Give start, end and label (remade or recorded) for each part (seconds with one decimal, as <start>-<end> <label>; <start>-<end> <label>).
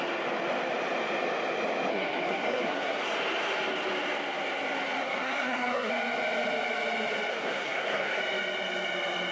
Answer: 0.0-1.9 recorded; 1.9-3.0 remade; 3.0-5.0 recorded; 5.0-5.9 remade; 5.9-7.3 recorded; 7.3-8.2 remade; 8.2-9.3 recorded